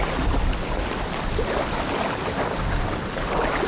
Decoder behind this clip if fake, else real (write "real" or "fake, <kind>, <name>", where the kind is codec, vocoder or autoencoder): real